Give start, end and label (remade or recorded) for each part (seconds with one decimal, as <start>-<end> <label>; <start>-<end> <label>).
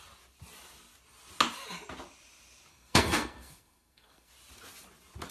0.0-2.7 recorded; 2.7-4.3 remade; 4.3-5.3 recorded